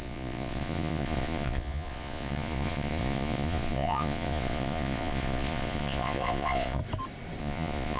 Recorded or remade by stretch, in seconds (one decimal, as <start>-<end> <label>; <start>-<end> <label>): 0.0-6.8 remade; 6.8-7.4 recorded; 7.4-8.0 remade

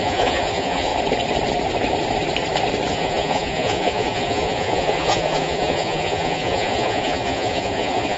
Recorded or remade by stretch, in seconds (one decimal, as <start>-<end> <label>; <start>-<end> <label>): 0.0-0.9 remade; 0.9-2.9 recorded; 2.9-8.2 remade